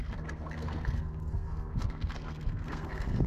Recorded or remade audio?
remade